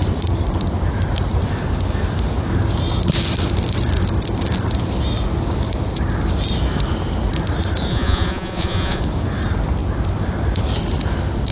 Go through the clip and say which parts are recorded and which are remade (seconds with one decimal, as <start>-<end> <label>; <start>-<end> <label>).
0.0-7.9 recorded; 7.9-9.0 remade; 9.0-11.5 recorded